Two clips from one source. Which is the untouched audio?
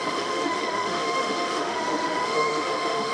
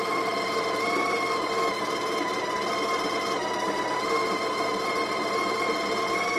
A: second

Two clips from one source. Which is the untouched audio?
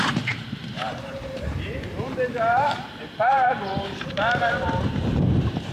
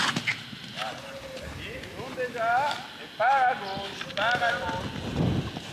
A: second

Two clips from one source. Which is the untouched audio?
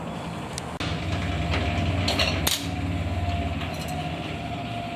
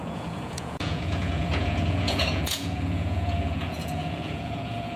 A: first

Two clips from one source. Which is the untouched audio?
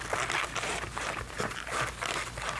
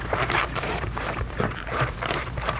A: first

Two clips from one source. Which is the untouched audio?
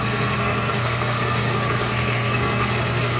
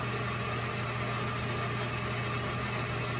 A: second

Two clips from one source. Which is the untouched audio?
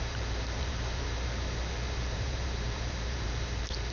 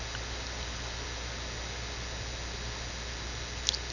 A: second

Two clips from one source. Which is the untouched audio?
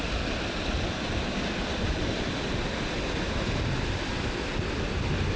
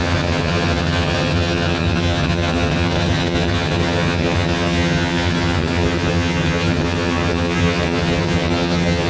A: first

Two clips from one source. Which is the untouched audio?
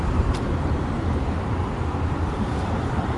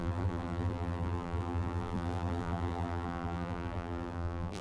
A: first